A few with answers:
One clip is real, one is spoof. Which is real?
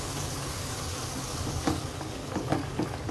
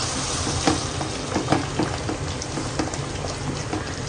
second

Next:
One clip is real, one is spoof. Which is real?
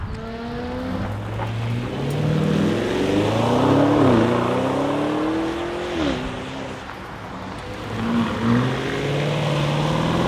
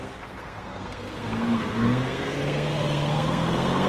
first